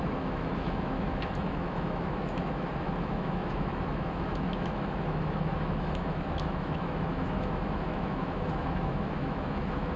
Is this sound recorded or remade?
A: remade